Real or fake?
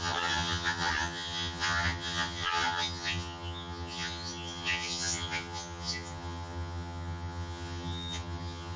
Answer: fake